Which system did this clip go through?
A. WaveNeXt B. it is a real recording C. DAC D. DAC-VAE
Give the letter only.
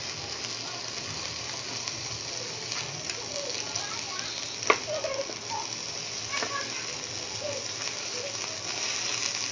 B